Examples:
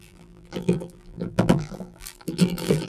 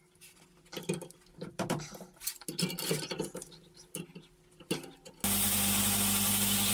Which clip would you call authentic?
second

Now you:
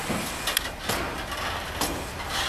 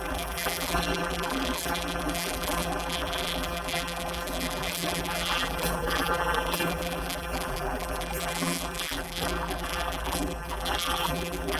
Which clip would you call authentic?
first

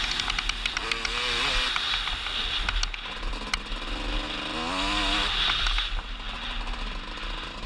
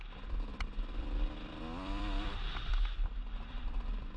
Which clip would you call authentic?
first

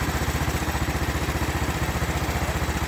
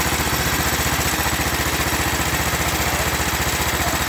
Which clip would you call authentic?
second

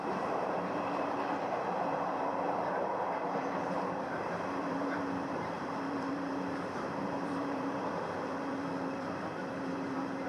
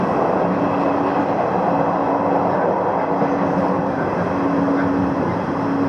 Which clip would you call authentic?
second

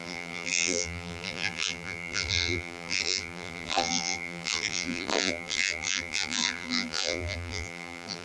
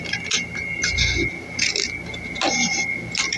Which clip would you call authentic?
second